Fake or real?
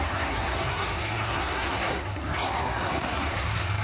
fake